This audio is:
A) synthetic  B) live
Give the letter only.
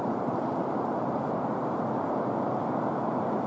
A